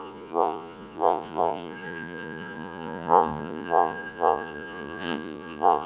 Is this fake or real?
fake